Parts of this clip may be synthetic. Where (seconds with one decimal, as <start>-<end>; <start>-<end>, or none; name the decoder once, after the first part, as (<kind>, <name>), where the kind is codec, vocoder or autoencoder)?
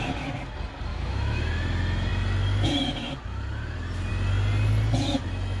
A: 0.9-1.5 (autoencoder, DAC-VAE)